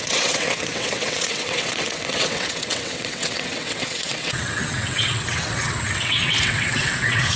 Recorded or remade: remade